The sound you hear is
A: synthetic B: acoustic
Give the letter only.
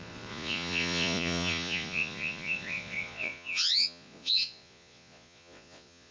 A